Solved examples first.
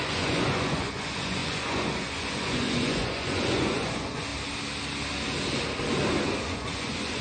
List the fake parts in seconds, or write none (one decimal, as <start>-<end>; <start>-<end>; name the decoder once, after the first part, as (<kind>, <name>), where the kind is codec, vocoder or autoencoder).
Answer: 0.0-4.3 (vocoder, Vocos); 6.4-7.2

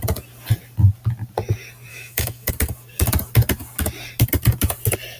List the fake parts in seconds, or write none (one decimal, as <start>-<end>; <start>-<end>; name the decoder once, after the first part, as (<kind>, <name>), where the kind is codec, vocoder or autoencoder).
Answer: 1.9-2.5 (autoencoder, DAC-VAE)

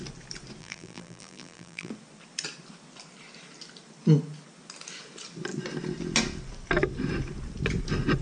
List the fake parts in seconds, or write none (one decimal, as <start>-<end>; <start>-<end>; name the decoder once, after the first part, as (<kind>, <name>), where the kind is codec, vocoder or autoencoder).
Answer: 0.6-1.9 (vocoder, BigVGAN v2)

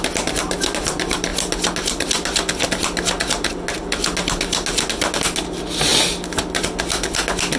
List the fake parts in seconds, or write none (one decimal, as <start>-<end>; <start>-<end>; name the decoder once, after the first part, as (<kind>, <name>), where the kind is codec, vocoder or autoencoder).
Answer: none

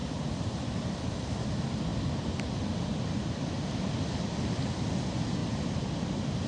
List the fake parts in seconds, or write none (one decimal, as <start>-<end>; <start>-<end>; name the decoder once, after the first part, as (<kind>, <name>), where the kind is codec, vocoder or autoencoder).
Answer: 0.0-1.0 (vocoder, BigVGAN v2); 5.4-6.5